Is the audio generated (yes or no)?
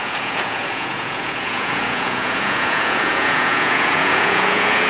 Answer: yes